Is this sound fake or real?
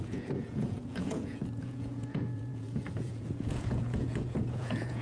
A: fake